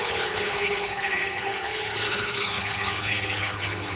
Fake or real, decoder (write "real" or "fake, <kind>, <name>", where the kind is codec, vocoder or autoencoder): fake, codec, HILCodec